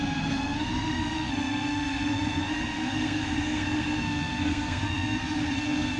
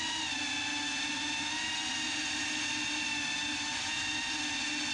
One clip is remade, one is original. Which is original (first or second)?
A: second